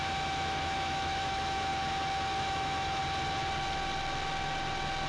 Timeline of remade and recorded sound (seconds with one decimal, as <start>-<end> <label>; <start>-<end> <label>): 0.0-1.7 remade; 1.7-2.4 recorded; 2.4-3.0 remade; 3.0-5.1 recorded